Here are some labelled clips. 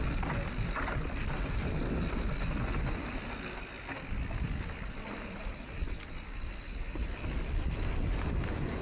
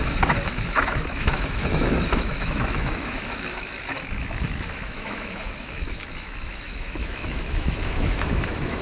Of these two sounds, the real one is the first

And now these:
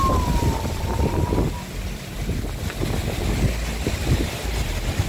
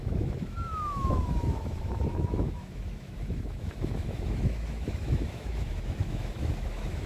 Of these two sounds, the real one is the first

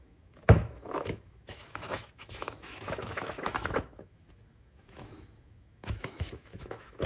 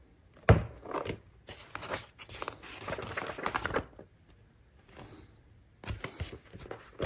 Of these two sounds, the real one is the second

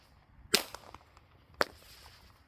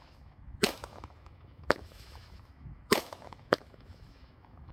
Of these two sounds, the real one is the first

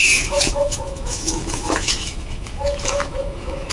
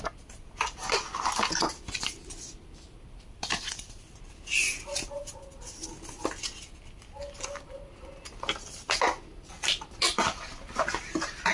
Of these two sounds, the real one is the second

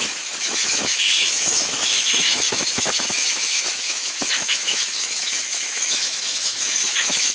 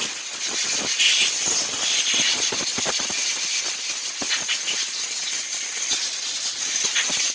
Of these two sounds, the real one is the second